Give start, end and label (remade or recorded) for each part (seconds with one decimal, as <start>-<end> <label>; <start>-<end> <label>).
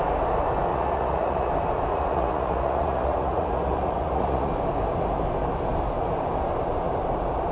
0.0-0.7 recorded; 0.7-1.5 remade; 1.5-1.9 recorded; 1.9-4.5 remade; 4.5-7.5 recorded